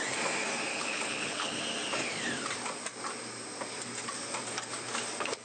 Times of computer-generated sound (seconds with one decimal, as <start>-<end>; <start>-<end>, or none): 0.7-1.6

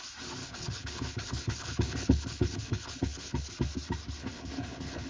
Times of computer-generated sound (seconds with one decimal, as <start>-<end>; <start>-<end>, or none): 0.4-3.5; 4.2-5.1

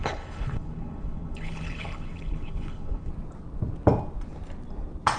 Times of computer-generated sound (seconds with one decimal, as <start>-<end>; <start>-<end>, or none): 0.0-3.1

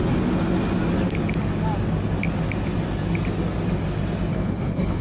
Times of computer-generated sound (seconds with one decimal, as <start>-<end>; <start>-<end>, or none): 4.3-5.0

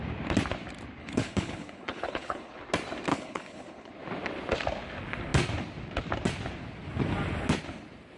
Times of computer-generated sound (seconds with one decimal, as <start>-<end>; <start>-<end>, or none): 1.0-2.6; 3.1-3.9

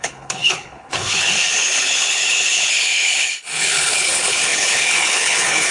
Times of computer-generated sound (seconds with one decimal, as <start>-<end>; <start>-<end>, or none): 0.0-5.7